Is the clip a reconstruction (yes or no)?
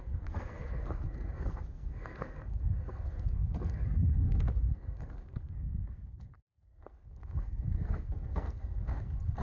yes